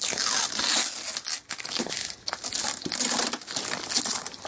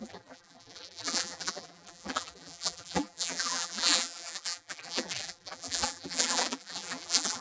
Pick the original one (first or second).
first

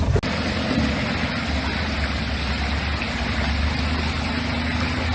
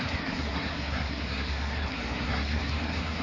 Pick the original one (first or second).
first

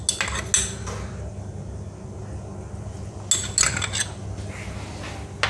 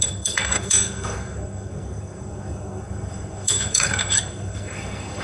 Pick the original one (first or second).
first